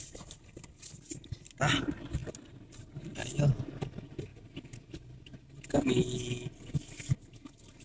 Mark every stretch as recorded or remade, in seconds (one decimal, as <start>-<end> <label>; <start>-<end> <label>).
0.0-7.8 recorded